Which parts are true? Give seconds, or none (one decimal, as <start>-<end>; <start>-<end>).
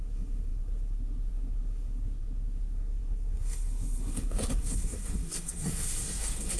none